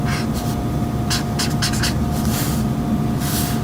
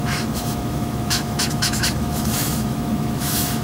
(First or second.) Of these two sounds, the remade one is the second